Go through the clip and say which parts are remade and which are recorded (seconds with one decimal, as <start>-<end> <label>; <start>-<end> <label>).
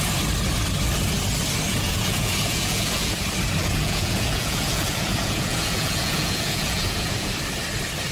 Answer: 0.0-1.7 recorded; 1.7-3.2 remade; 3.2-3.6 recorded; 3.6-7.3 remade; 7.3-8.1 recorded